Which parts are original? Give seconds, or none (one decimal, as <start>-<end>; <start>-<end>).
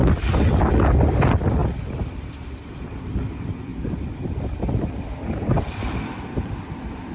0.0-0.6; 1.6-2.7; 3.7-4.6